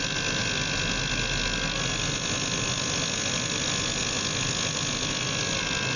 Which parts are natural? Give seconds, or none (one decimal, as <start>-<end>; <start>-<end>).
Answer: 0.0-6.0